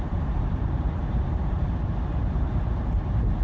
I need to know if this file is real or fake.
fake